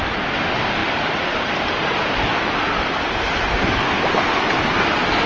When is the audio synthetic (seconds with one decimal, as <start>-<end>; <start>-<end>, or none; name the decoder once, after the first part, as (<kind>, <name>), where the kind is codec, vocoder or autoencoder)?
none